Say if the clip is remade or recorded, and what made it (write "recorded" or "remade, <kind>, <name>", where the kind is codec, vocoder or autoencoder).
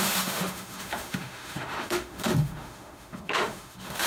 remade, autoencoder, DAC-VAE